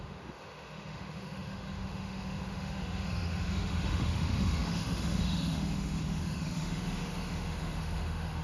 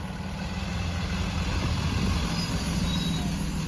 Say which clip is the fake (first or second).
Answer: first